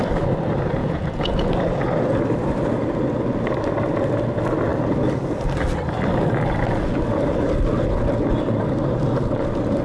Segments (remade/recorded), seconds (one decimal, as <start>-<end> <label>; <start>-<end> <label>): 0.0-0.8 recorded; 0.8-1.5 remade; 1.5-9.8 recorded